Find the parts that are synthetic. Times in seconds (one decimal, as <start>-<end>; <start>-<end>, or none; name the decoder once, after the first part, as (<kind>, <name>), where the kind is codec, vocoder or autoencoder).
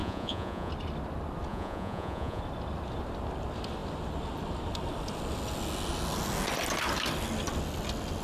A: 0.0-0.7 (vocoder, Vocos); 1.5-2.4